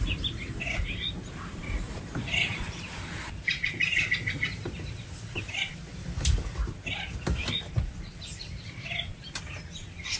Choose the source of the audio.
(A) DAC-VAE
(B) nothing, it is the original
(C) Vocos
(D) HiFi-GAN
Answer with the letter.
B